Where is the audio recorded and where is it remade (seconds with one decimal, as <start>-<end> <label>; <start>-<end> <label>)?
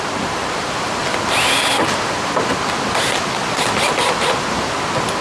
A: 0.0-5.2 recorded